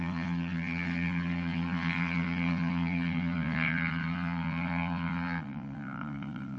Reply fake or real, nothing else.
fake